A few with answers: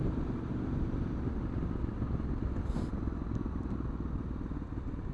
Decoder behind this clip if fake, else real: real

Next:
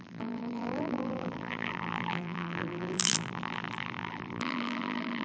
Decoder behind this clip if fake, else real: fake, vocoder, BigVGAN v2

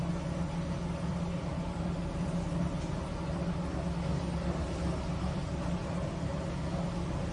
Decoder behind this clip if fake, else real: real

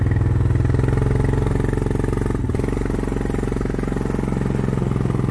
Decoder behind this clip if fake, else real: real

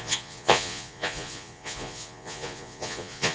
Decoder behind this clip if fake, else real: fake, vocoder, Vocos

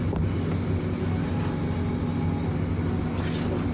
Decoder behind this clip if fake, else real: real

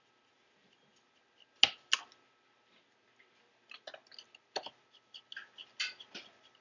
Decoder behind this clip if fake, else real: real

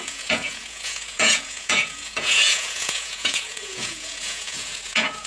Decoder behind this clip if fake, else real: fake, vocoder, Vocos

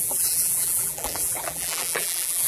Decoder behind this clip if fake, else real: fake, vocoder, BigVGAN v2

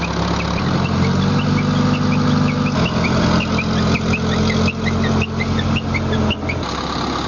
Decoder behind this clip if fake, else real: real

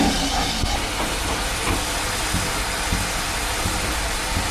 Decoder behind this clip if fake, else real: real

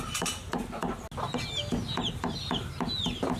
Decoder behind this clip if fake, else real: real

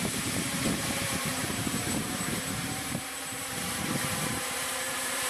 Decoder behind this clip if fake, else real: fake, vocoder, BigVGAN v2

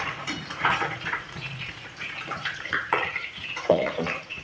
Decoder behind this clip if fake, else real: fake, vocoder, Vocos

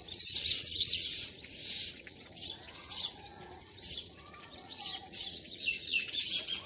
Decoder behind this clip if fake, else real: fake, vocoder, Vocos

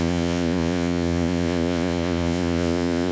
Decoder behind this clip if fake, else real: fake, vocoder, Vocos